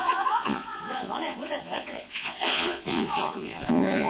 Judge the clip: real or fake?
fake